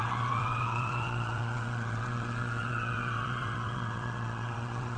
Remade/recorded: remade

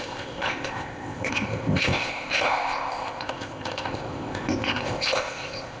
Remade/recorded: remade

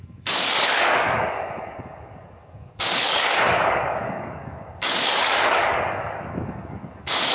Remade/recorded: remade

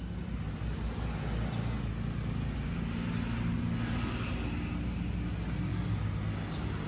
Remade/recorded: recorded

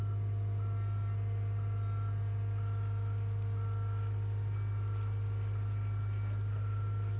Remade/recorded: recorded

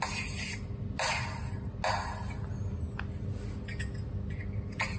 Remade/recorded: recorded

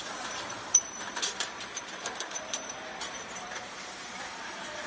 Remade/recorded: remade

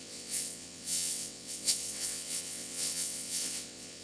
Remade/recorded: remade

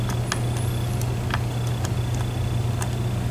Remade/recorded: recorded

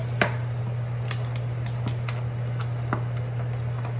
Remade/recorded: recorded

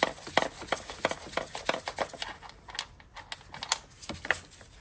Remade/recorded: recorded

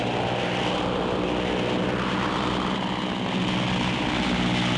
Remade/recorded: recorded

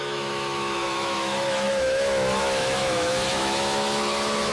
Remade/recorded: remade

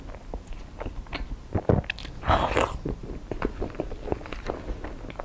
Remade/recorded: recorded